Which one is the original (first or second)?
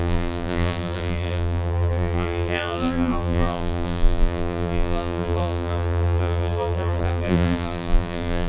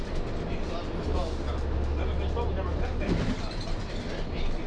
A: second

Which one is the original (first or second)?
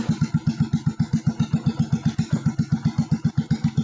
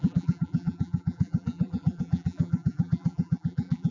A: first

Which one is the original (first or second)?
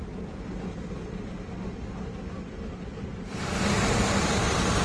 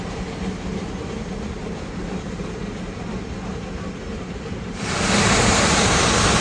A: first